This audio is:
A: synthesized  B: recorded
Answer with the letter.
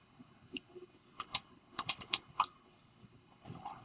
A